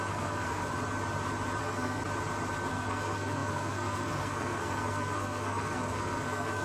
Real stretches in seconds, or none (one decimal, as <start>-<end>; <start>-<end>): 0.6-1.6; 2.0-2.7